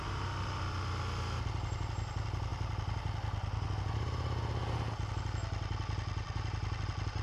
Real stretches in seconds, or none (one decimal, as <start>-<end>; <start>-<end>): 0.0-7.2